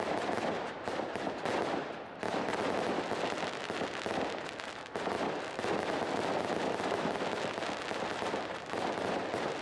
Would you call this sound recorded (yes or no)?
yes